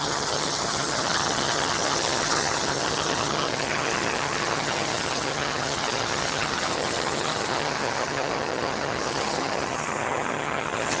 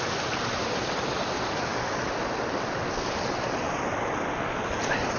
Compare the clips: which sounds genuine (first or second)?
second